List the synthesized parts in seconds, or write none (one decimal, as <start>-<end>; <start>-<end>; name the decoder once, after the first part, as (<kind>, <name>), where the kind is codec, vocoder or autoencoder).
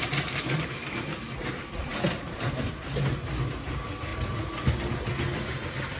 none